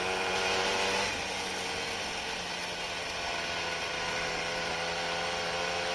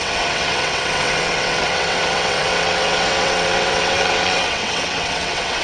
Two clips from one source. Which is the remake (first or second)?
second